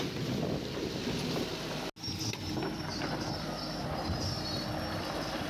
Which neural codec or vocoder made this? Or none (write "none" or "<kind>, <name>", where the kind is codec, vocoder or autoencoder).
none